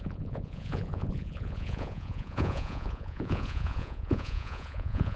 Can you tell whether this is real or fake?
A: fake